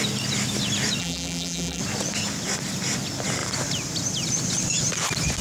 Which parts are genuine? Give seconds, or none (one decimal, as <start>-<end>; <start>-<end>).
0.0-1.0; 1.8-5.4